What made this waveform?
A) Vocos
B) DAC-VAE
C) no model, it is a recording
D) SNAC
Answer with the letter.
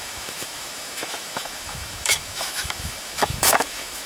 B